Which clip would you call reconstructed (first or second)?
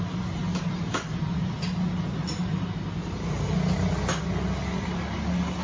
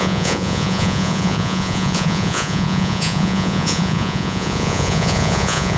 second